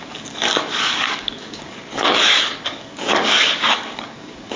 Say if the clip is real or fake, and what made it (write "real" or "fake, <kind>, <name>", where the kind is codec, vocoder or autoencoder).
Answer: fake, codec, DAC